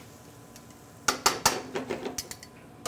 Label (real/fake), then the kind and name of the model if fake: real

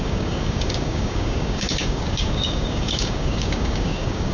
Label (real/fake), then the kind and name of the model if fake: fake, codec, DAC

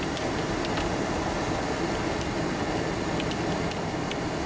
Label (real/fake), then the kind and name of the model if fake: real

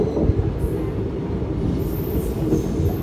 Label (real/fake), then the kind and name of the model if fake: real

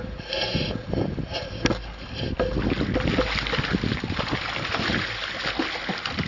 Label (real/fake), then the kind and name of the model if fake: real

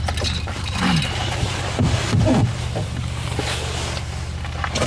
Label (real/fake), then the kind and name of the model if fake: real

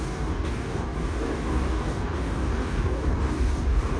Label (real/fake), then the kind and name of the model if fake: fake, codec, DAC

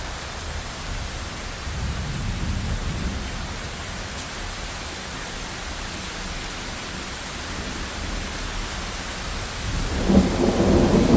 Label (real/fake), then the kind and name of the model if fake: real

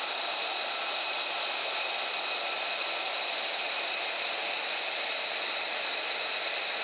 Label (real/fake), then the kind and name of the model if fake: real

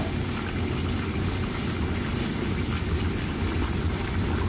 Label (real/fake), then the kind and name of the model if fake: real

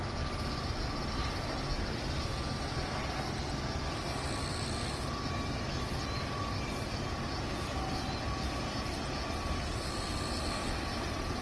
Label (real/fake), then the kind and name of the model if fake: real